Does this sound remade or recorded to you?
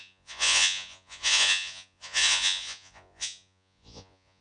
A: remade